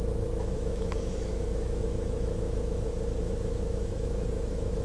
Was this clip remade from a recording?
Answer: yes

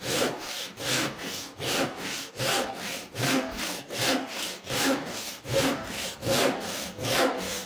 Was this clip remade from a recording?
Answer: yes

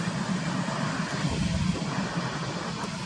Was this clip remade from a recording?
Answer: no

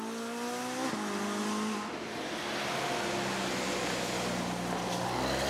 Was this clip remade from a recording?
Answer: no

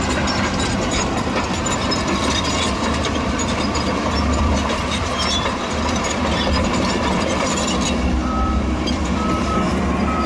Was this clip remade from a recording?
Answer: yes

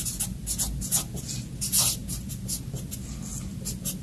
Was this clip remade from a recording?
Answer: no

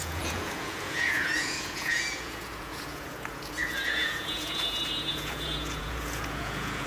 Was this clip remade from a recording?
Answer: yes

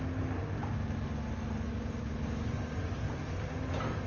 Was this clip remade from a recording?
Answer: no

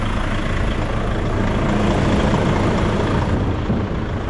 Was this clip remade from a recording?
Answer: no